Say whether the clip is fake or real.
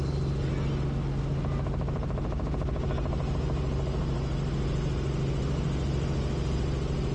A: real